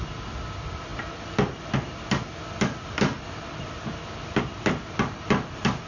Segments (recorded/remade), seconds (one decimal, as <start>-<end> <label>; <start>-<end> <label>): 0.0-5.9 recorded